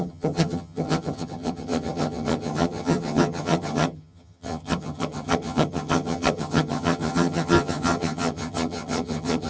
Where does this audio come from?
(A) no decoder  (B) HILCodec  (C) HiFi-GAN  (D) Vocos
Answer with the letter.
C